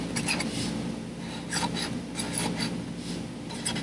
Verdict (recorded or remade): recorded